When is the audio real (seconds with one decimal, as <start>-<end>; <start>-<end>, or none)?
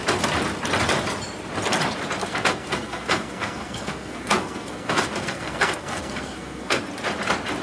0.0-2.2; 6.8-7.6